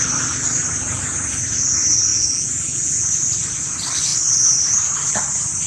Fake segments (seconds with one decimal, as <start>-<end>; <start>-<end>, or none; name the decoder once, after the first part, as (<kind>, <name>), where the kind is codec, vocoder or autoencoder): 2.1-3.1 (vocoder, Vocos)